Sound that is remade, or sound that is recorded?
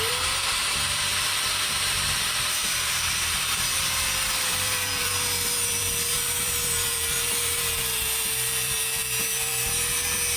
remade